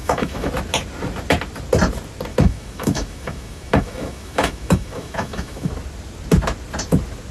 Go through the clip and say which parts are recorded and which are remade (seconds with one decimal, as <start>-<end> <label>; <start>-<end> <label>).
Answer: 0.0-0.5 remade; 0.5-2.3 recorded; 2.3-5.7 remade; 5.7-7.3 recorded